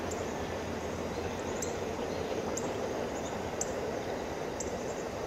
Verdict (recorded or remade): remade